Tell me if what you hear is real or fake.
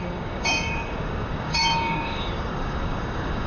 fake